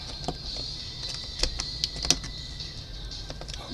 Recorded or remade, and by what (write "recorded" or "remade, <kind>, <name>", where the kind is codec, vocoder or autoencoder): recorded